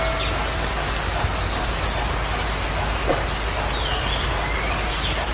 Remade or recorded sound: recorded